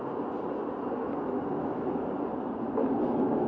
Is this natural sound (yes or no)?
yes